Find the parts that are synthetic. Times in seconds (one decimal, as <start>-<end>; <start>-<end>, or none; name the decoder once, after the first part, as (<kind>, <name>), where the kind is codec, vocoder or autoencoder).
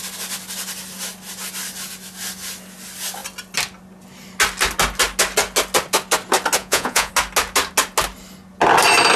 6.6-7.1 (vocoder, Vocos)